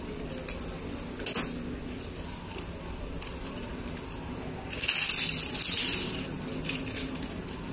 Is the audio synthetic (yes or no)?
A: no